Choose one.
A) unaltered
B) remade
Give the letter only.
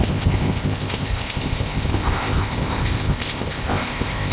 B